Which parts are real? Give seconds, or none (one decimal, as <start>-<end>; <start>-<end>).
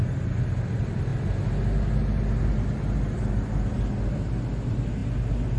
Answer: 0.0-5.6